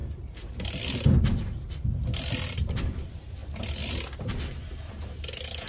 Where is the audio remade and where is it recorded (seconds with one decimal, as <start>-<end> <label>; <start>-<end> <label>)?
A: 0.0-5.7 remade